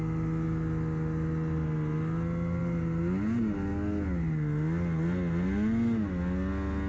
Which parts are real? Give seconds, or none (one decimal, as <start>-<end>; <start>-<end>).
0.0-6.9

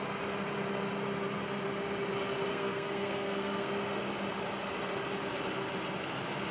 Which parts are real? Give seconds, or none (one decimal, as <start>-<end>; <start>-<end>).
0.0-2.5; 3.7-6.5